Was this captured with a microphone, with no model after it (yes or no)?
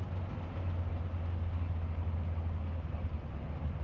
yes